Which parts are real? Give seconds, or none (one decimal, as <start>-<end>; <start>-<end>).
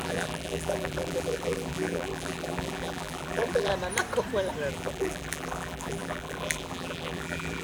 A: 3.7-4.7